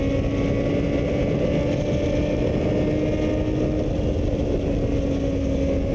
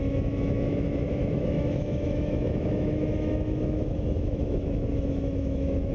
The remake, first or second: second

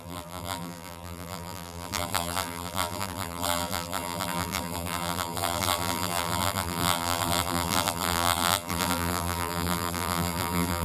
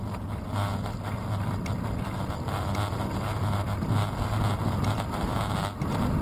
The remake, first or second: first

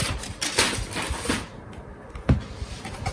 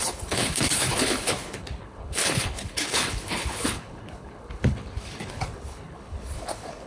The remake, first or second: second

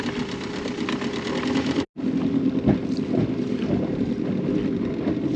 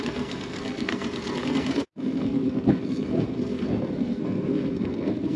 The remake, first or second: second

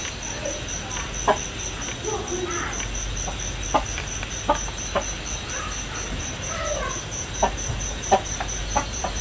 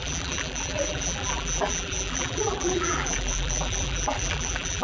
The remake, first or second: second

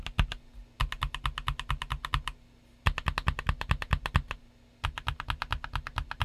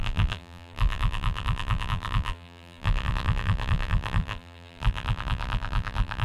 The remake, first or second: second